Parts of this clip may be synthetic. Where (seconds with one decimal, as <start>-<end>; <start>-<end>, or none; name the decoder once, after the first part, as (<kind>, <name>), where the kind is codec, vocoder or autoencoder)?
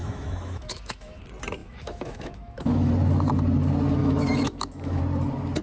0.0-1.2 (autoencoder, DAC-VAE); 1.6-2.9; 4.0-5.0